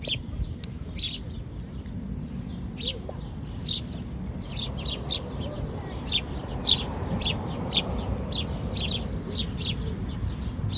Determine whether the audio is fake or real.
real